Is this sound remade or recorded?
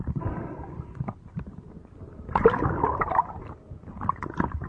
recorded